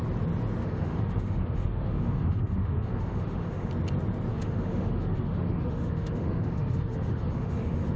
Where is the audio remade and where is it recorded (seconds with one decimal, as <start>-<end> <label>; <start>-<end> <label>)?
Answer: 0.0-0.6 recorded; 0.6-3.7 remade; 3.7-4.3 recorded; 4.3-8.0 remade